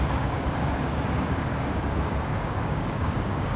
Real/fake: fake